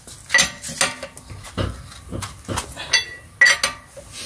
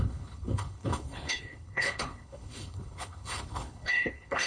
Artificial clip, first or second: second